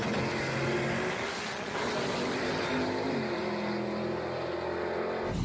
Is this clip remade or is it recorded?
recorded